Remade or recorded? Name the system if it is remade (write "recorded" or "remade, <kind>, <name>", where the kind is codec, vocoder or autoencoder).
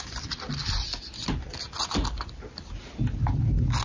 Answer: recorded